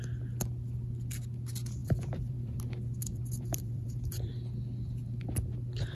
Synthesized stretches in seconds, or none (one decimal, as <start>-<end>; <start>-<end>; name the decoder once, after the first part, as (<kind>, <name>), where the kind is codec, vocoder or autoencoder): 1.8-2.6 (vocoder, BigVGAN v2); 3.1-4.3